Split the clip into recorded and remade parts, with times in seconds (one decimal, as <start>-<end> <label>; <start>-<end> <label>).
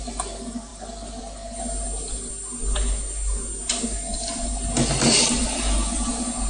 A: 0.0-6.5 recorded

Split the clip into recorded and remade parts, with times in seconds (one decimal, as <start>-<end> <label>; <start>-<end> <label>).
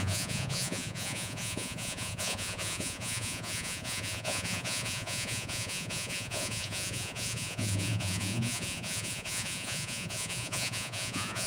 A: 0.0-11.5 remade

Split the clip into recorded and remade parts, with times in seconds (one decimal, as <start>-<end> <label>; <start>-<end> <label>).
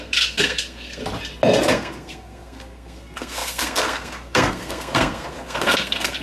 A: 0.0-1.0 remade; 1.0-1.7 recorded; 1.7-6.2 remade